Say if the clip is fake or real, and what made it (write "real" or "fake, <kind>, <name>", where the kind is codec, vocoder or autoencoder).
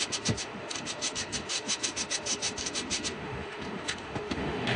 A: fake, autoencoder, DAC-VAE